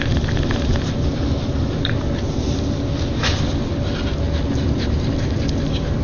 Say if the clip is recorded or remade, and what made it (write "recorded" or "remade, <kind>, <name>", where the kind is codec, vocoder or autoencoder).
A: recorded